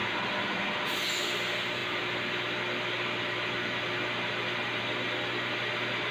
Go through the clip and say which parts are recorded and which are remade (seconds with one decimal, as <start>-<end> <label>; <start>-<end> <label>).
0.0-6.1 recorded